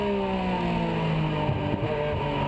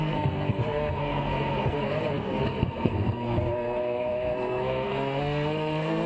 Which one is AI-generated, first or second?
second